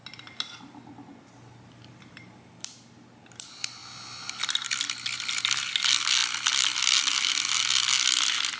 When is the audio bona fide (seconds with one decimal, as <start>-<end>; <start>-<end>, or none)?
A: 0.0-8.6